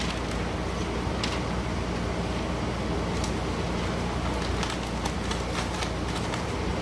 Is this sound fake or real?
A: real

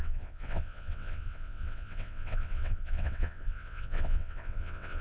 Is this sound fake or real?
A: fake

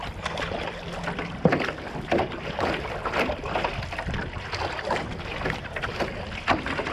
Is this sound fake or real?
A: real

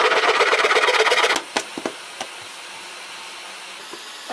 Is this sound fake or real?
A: real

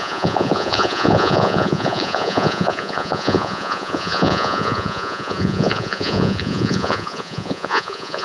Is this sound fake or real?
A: fake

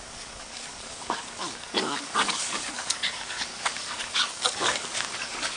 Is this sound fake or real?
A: fake